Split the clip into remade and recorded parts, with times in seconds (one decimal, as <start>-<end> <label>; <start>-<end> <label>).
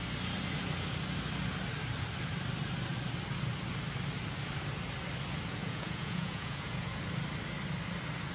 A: 0.0-5.6 recorded; 5.6-7.0 remade; 7.0-8.3 recorded